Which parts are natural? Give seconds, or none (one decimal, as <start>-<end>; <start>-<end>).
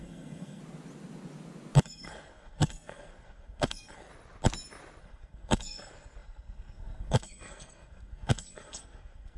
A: 0.6-1.8; 4.1-5.0